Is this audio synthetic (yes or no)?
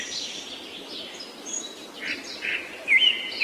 no